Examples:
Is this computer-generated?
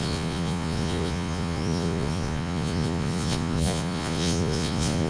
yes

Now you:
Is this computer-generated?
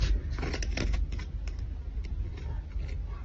no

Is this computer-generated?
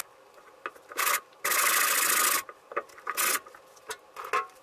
no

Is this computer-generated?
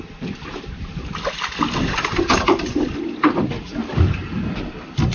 no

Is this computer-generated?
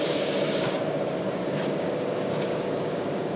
yes